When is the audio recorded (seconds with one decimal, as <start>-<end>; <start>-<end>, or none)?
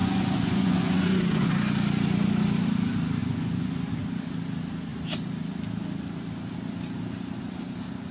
1.5-3.2; 3.9-8.1